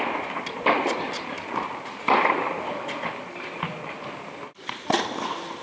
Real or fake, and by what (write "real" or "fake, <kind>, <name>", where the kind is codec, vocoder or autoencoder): real